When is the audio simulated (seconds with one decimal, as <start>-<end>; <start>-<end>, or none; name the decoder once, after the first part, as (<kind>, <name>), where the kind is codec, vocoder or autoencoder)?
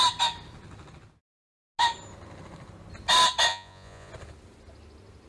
3.5-4.1 (vocoder, Vocos)